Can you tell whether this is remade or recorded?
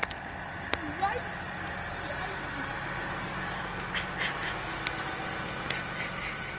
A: recorded